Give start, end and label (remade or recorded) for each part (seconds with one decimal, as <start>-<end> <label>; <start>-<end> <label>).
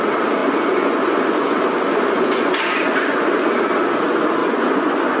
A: 0.0-0.4 recorded; 0.4-3.5 remade; 3.5-4.4 recorded; 4.4-5.2 remade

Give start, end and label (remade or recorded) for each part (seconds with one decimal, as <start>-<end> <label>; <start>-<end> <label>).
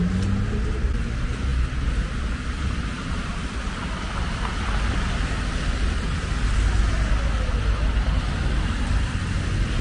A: 0.0-9.8 recorded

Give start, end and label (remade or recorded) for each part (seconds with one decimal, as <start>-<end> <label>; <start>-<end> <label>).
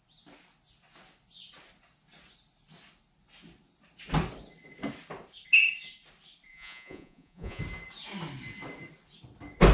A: 0.0-6.5 recorded; 6.5-7.6 remade; 7.6-9.7 recorded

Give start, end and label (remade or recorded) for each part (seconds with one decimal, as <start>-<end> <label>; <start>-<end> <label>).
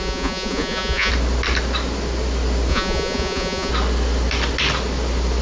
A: 0.0-1.1 remade; 1.1-2.7 recorded; 2.7-3.7 remade; 3.7-5.4 recorded